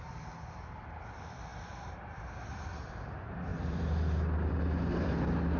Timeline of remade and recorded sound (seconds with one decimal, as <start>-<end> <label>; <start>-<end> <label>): 0.0-5.6 remade